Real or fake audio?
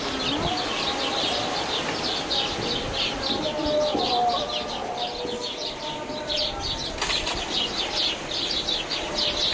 real